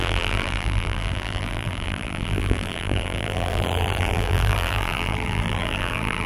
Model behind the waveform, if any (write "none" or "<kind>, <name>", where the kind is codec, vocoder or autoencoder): vocoder, BigVGAN v2